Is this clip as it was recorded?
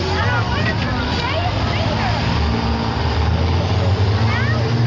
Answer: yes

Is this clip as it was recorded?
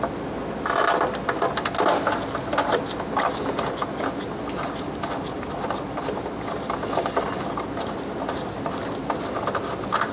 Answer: yes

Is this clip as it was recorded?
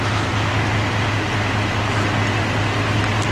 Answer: yes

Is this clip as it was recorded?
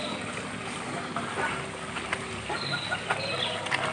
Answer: yes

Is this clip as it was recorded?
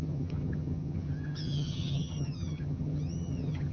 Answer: no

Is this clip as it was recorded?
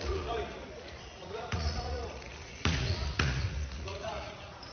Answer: no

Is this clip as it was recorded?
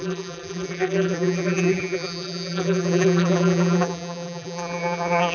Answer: no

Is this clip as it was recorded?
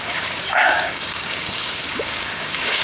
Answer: no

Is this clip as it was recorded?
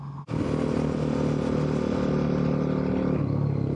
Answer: yes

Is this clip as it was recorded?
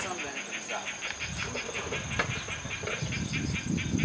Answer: yes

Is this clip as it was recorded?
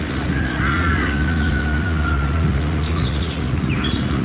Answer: no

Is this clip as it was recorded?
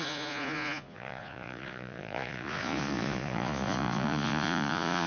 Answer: no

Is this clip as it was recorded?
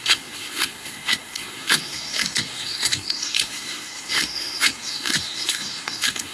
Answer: no